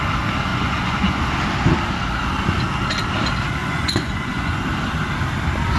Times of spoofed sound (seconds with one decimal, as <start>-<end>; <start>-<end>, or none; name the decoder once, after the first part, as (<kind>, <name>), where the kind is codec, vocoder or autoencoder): 0.5-1.2 (vocoder, Vocos); 3.6-4.6